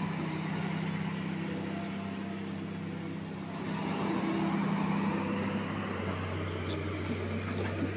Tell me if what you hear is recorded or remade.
recorded